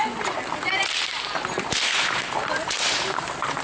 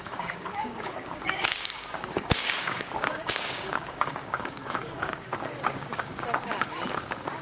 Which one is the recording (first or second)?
first